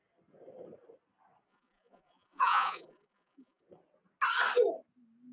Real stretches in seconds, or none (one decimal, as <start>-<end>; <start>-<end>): 0.0-1.5; 3.6-5.3